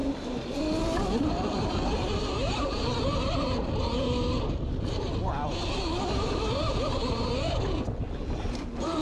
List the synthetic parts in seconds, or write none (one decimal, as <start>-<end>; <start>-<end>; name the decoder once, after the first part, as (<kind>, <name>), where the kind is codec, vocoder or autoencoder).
0.0-0.6 (vocoder, BigVGAN v2)